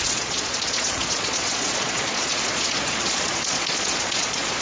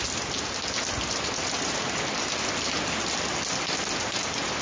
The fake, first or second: first